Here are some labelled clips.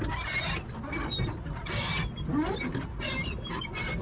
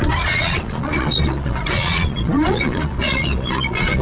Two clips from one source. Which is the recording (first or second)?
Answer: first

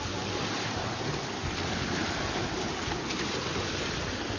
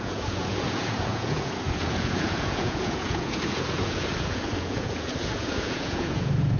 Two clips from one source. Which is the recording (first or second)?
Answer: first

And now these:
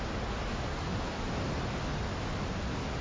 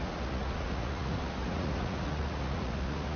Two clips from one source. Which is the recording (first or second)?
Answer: first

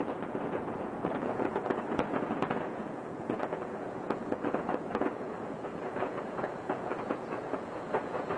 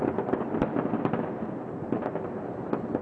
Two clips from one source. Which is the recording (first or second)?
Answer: second